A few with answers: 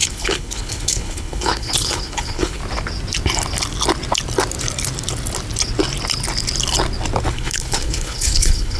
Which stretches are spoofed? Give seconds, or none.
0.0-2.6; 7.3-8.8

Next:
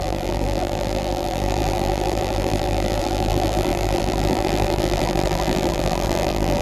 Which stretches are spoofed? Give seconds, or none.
0.0-6.6

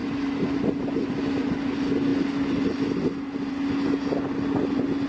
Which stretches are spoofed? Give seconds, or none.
none

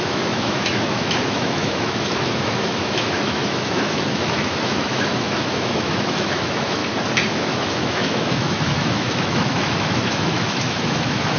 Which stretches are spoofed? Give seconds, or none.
0.0-6.8; 7.3-11.4